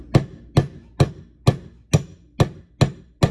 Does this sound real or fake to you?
real